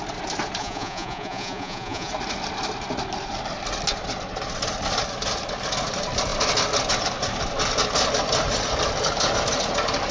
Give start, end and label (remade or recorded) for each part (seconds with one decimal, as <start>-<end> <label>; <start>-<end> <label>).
0.0-0.6 recorded; 0.6-2.1 remade; 2.1-10.1 recorded